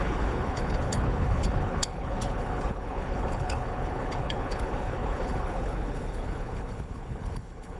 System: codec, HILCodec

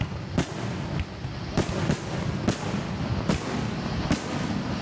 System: none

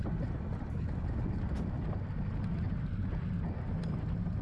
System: none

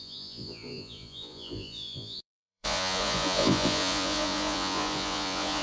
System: vocoder, Vocos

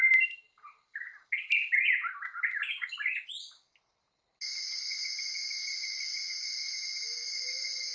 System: none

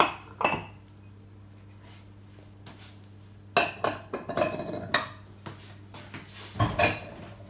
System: none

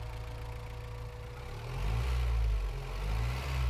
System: none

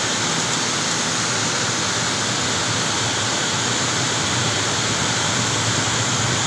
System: none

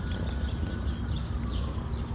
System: none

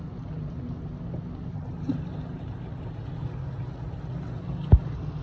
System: none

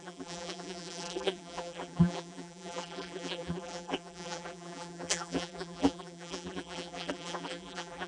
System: vocoder, BigVGAN v2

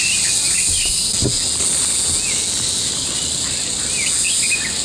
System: none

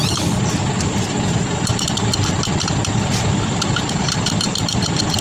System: none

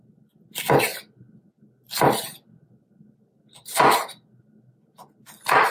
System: none